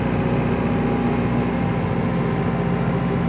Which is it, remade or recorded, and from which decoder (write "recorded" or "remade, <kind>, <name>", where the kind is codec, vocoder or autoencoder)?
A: recorded